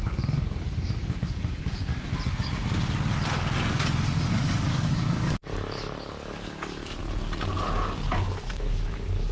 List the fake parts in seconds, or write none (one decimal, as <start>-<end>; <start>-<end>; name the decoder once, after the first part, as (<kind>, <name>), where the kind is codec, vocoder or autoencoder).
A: 0.0-1.9 (codec, DAC); 4.3-7.0; 8.4-9.3